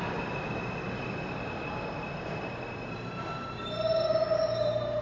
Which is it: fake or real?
real